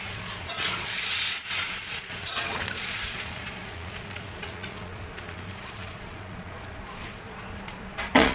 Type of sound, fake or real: fake